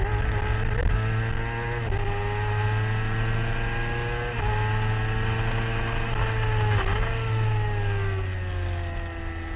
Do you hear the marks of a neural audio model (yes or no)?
no